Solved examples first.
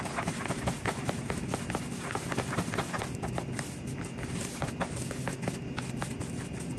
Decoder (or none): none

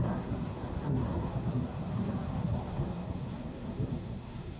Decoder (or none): codec, SNAC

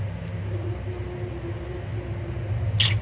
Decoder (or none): none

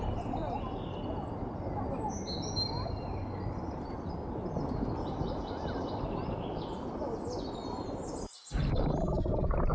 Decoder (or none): none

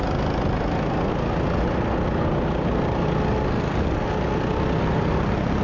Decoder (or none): none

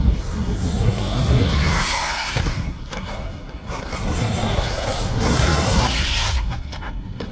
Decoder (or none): codec, SNAC